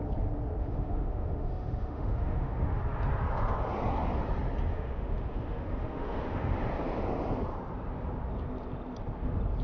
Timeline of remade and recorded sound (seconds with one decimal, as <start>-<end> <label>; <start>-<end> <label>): 0.0-0.6 recorded; 0.6-2.8 remade; 2.8-4.7 recorded; 4.7-6.6 remade; 6.6-9.6 recorded